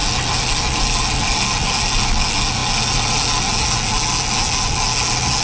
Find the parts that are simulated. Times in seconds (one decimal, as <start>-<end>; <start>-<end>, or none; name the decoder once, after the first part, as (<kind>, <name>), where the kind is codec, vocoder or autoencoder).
none